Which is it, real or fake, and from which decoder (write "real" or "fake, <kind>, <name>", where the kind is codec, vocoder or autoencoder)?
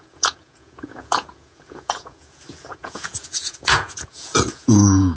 fake, vocoder, Vocos